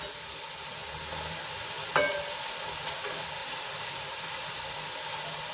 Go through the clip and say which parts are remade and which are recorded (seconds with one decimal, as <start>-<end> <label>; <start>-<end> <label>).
0.0-3.4 recorded; 3.4-4.6 remade; 4.6-5.5 recorded